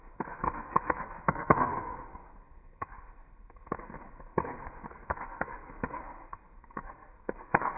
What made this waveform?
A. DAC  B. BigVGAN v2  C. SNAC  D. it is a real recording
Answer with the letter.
C